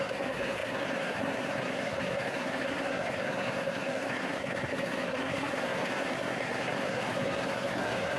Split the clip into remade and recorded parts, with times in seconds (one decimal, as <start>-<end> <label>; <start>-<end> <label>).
0.0-8.2 remade